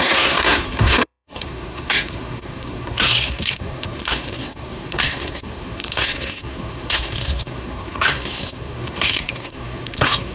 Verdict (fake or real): fake